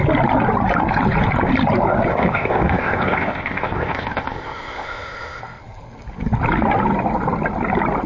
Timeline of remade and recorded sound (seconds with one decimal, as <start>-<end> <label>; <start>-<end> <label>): 0.0-2.1 recorded; 2.1-5.4 remade; 5.4-8.1 recorded